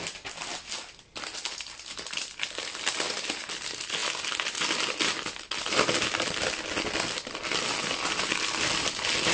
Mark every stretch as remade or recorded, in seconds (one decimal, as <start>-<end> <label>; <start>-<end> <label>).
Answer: 0.0-9.3 recorded